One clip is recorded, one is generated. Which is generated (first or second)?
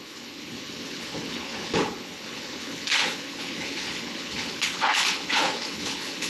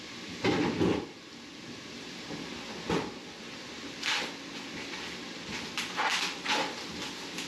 first